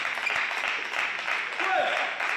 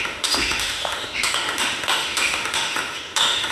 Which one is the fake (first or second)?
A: second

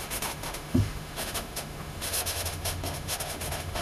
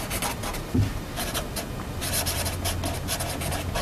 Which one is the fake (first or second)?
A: first